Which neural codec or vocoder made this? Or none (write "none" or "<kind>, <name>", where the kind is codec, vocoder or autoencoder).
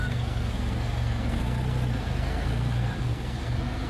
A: codec, SNAC